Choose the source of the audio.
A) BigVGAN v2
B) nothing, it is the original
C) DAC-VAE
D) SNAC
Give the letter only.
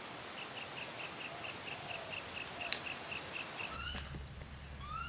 B